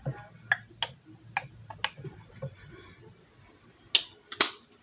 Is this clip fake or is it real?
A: real